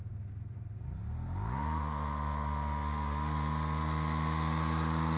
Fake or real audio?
real